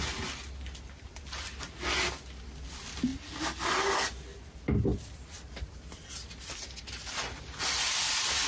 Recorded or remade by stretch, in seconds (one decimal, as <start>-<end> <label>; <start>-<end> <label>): 0.0-8.5 recorded